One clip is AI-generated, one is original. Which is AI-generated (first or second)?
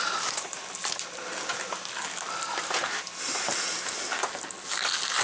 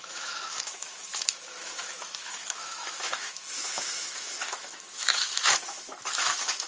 second